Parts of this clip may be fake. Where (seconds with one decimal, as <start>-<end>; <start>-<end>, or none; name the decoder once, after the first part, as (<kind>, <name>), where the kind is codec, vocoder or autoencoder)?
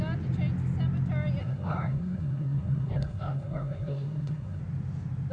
1.4-4.6 (codec, SNAC)